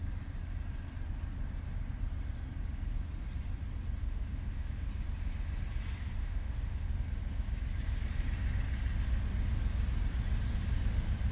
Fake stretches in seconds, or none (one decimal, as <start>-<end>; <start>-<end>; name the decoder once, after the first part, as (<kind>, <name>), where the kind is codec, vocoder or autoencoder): 4.0-4.9 (autoencoder, DAC-VAE); 6.2-6.9